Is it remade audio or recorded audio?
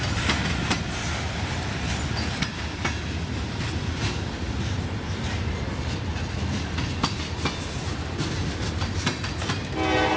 recorded